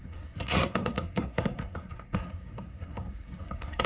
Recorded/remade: remade